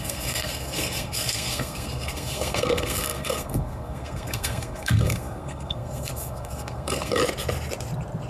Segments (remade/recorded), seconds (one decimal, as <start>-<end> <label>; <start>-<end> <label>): 0.0-7.2 remade; 7.2-8.3 recorded